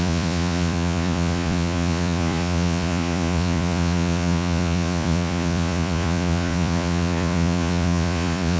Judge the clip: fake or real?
fake